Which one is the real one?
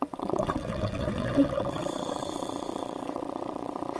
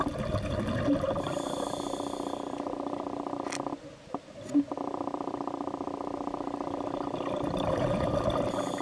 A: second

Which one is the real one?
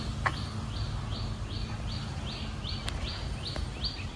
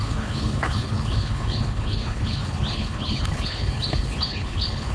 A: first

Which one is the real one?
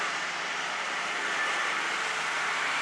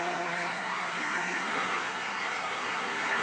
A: first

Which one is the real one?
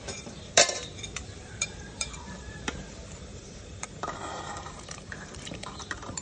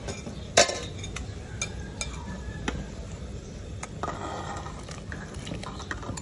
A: second